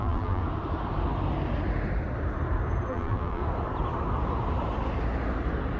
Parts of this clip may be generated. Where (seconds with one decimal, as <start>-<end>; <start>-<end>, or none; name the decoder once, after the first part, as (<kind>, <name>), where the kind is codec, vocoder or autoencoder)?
0.0-0.4 (vocoder, BigVGAN v2); 2.9-3.4